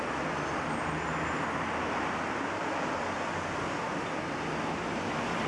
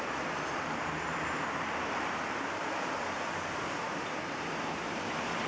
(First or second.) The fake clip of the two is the second